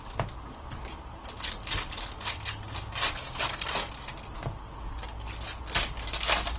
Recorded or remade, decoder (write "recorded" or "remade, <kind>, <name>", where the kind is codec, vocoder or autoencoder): recorded